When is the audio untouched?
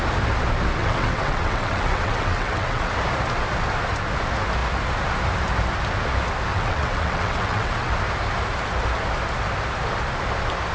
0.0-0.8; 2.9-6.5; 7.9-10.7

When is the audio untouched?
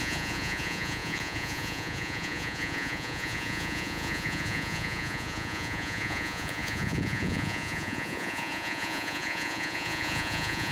none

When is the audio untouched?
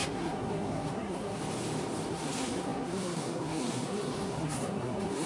1.4-2.1